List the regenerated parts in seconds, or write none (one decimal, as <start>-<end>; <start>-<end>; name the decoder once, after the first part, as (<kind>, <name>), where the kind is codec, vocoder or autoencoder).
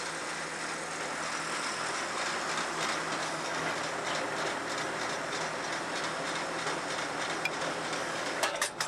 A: 3.2-3.8 (codec, DAC); 8.0-8.9